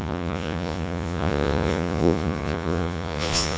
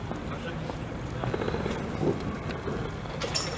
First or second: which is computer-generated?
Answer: first